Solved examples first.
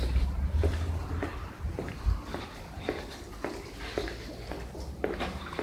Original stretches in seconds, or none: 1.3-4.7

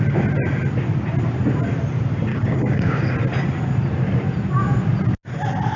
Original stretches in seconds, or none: 0.0-2.3; 3.0-5.8

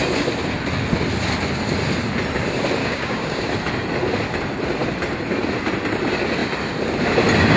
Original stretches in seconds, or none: 0.0-2.8; 3.5-7.6

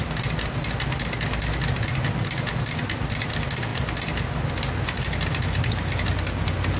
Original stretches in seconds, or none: 0.0-6.8